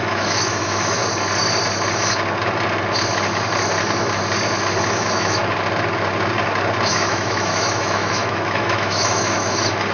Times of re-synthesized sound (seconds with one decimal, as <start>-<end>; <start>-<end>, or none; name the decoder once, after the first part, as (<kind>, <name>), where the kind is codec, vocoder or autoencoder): 0.0-1.0 (autoencoder, DAC-VAE); 4.8-5.4; 6.9-9.9